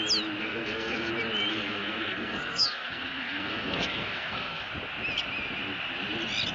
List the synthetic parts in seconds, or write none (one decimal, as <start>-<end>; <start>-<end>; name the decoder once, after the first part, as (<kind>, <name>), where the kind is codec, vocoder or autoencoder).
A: 0.4-1.1 (codec, SNAC); 1.5-4.7

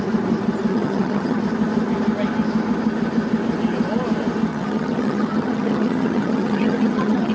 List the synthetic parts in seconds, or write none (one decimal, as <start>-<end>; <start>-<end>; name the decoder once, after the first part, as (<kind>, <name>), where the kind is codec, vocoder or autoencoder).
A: 0.7-1.4 (vocoder, HiFi-GAN); 4.5-7.3